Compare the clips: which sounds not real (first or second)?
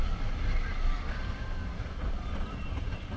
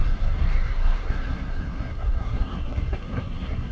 second